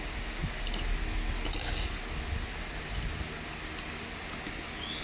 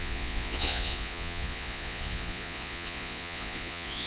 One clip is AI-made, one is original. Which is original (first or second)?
first